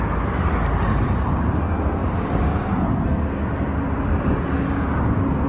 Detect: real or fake real